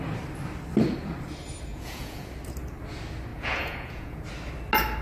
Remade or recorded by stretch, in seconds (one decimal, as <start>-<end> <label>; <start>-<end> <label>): 0.0-1.7 recorded; 1.7-2.3 remade; 2.3-3.3 recorded; 3.3-4.2 remade; 4.2-5.0 recorded